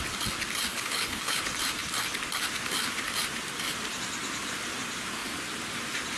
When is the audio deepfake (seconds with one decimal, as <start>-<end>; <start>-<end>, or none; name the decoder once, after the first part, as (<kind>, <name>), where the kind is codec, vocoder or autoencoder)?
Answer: 0.7-1.4 (codec, HILCodec)